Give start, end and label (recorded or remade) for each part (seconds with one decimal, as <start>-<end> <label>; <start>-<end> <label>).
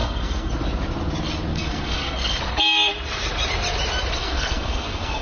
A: 0.0-0.5 remade; 0.5-1.5 recorded; 1.5-2.4 remade; 2.4-4.2 recorded; 4.2-5.2 remade